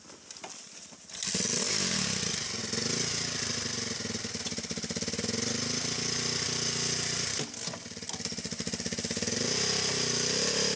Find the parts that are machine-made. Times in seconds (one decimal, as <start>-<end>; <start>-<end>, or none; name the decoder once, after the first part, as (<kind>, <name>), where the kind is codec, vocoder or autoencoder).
none